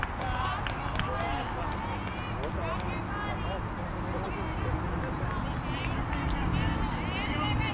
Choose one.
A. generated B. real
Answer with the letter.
B